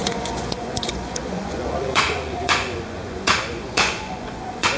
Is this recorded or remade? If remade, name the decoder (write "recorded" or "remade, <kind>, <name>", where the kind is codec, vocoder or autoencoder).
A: remade, vocoder, Vocos